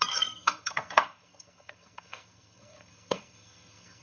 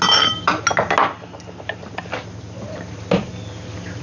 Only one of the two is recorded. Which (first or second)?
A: second